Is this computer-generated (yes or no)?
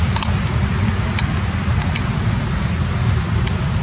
no